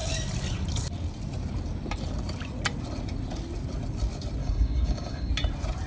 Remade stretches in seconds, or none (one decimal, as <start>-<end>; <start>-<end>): 4.4-5.3